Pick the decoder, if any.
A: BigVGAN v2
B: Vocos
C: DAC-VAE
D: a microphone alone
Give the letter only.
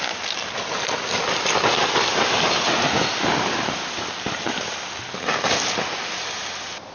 D